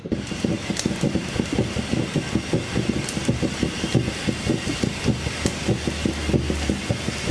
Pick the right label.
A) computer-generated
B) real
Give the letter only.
B